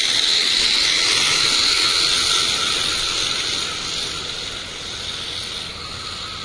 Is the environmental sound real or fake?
real